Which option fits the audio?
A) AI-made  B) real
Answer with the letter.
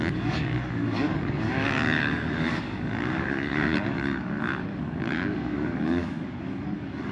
A